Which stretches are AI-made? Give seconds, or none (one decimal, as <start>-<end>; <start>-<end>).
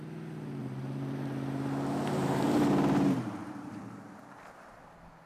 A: 0.6-3.8